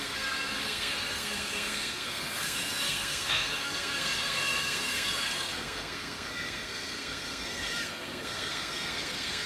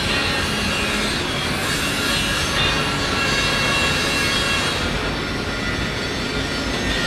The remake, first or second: first